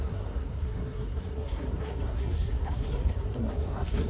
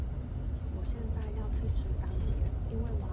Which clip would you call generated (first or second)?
first